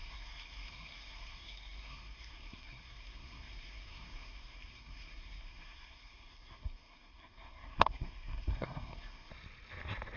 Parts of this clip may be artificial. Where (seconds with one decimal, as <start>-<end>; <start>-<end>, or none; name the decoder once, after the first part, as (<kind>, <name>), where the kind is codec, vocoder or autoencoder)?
0.0-9.3 (codec, SNAC)